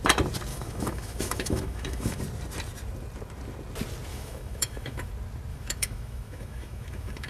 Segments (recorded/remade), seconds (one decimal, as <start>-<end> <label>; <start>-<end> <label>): 0.0-0.5 recorded; 0.5-2.2 remade; 2.2-4.1 recorded; 4.1-5.1 remade; 5.1-5.5 recorded; 5.5-7.3 remade